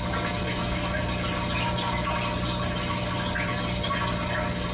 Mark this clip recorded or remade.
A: recorded